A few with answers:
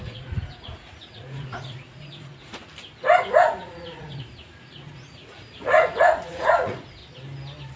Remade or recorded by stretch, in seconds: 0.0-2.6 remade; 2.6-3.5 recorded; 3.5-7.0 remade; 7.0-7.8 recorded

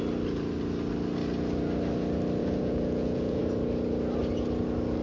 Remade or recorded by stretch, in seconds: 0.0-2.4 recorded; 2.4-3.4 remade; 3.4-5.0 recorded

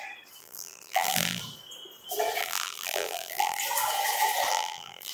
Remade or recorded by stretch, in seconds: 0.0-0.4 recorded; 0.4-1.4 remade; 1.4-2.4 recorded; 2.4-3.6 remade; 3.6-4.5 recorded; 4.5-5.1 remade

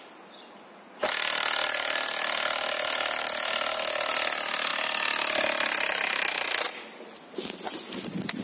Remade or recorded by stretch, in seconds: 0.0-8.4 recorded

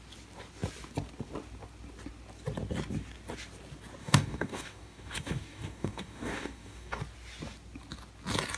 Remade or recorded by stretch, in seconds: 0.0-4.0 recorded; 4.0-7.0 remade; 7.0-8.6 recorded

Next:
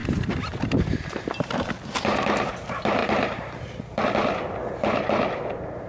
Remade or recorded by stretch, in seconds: 0.0-1.7 remade; 1.7-3.0 recorded; 3.0-4.0 remade; 4.0-5.9 recorded

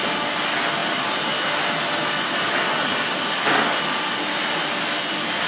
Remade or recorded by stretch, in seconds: 0.0-5.5 recorded

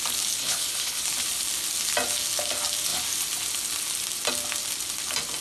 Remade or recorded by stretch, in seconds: 0.0-0.4 recorded; 0.4-1.0 remade; 1.0-5.4 recorded